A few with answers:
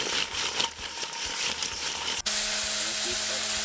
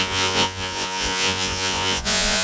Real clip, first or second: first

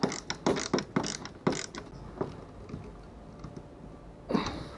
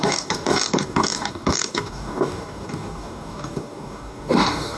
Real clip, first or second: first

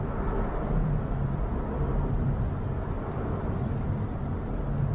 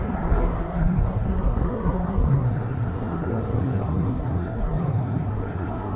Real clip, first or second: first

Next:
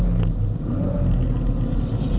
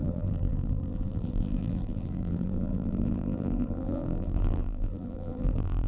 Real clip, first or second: first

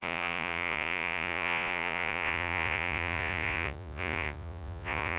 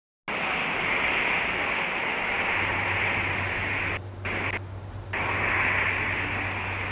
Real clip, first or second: second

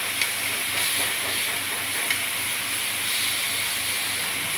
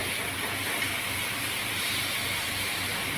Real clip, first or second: first